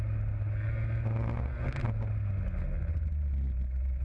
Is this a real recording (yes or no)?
yes